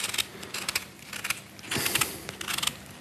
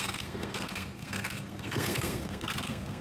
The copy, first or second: second